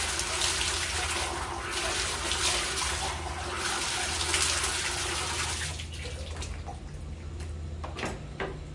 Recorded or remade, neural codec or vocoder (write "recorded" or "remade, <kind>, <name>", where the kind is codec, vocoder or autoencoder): recorded